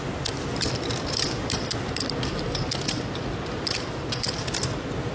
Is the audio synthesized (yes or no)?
no